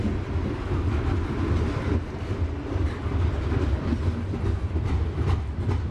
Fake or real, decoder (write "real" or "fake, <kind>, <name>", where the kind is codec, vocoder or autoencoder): real